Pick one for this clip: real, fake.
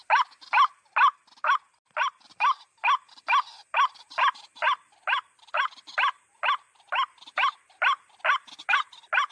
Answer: real